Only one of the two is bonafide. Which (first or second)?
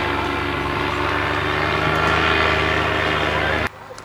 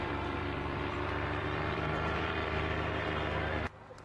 first